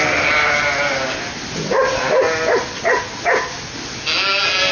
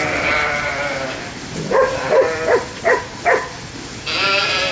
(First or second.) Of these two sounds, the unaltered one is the first